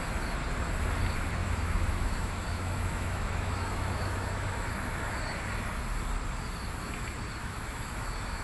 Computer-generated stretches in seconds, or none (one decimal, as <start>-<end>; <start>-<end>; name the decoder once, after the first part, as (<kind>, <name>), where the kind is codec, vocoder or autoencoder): 1.4-5.1 (autoencoder, DAC-VAE); 7.4-8.4